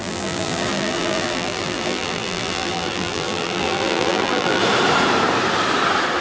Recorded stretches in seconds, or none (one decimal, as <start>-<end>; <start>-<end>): 4.6-6.2